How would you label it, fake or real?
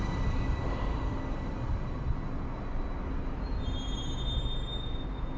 real